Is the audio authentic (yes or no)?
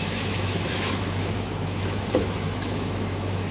no